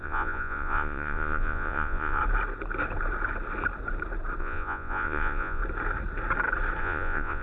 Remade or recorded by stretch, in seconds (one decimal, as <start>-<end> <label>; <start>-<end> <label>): 0.0-2.2 remade; 2.2-4.4 recorded; 4.4-5.6 remade; 5.6-6.8 recorded; 6.8-7.4 remade